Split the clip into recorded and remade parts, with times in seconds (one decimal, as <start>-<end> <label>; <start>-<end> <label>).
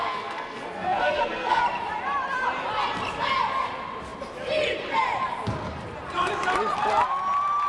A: 0.0-1.6 remade; 1.6-7.7 recorded